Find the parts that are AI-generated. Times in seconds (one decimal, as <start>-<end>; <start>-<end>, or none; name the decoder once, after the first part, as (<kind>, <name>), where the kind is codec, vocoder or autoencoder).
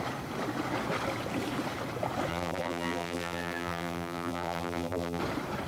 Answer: 2.3-5.2 (vocoder, BigVGAN v2)